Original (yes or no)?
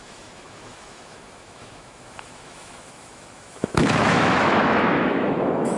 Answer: no